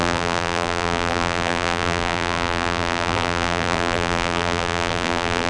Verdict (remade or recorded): remade